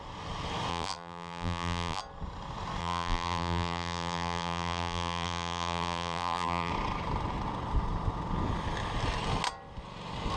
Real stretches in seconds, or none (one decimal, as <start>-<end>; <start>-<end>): 0.0-0.7; 2.0-2.8; 6.7-10.4